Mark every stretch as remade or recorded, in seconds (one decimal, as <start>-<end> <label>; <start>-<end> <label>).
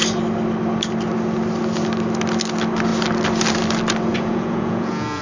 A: 0.0-4.1 recorded; 4.1-5.2 remade